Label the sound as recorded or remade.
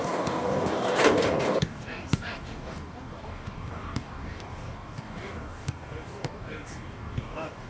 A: remade